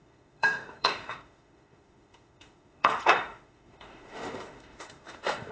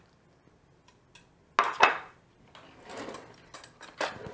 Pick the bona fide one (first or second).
second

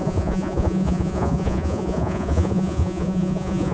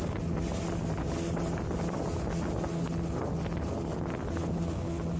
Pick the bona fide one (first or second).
second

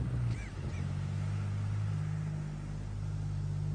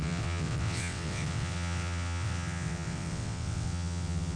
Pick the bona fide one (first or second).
first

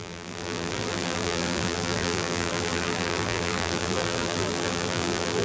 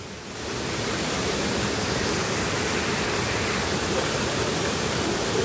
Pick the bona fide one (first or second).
second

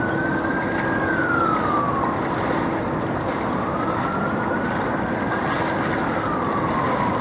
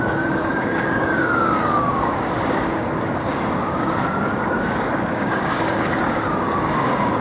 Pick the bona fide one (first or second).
first